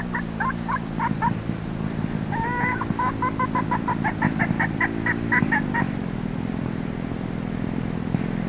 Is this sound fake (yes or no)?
no